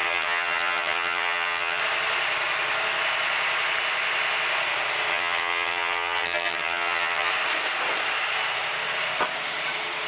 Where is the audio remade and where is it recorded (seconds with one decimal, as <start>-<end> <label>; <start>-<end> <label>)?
0.0-1.8 remade; 1.8-5.1 recorded; 5.1-7.3 remade; 7.3-10.1 recorded